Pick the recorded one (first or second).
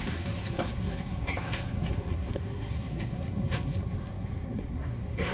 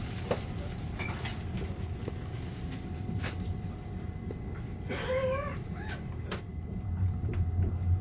second